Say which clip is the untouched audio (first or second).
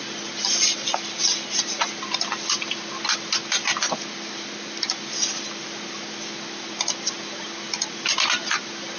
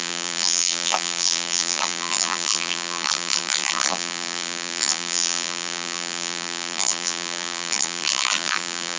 first